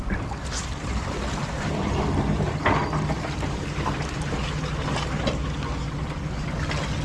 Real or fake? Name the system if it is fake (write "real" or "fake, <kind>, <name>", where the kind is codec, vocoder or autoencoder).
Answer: real